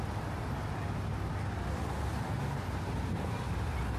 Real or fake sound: real